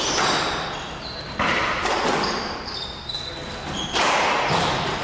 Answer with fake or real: real